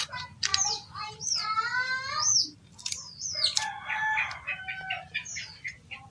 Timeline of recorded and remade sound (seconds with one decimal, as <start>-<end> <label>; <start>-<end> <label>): 0.0-0.5 remade; 0.5-1.1 recorded; 1.1-1.7 remade; 1.7-5.0 recorded; 5.0-6.1 remade